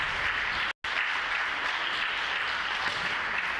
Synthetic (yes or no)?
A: no